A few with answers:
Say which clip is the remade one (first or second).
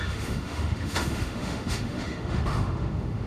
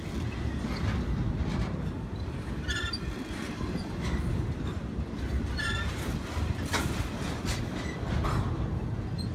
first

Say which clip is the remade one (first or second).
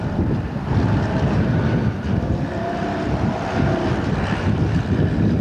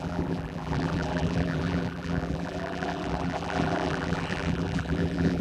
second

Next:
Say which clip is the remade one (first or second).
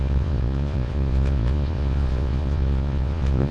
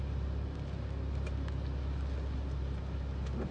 first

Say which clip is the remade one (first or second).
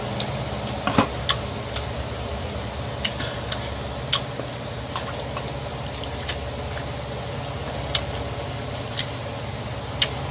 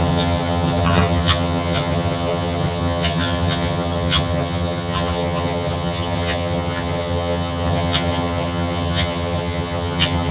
second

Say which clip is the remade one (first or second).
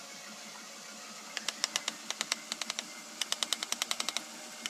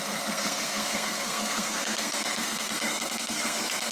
second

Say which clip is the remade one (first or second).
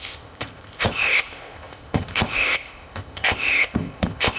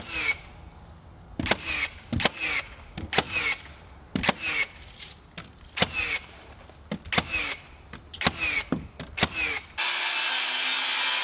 first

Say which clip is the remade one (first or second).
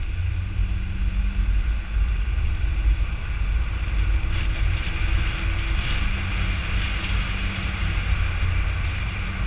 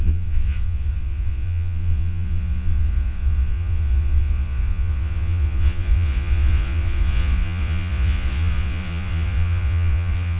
second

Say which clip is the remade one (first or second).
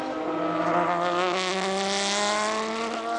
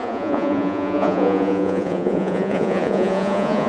second